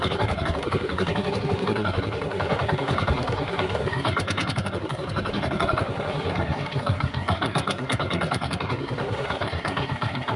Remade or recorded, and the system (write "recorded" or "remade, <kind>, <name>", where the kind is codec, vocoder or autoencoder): remade, codec, SNAC